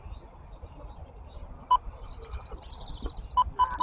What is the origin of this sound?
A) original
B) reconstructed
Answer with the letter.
A